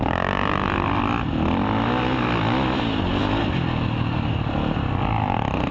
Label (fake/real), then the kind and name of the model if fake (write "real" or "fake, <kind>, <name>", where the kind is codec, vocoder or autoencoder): real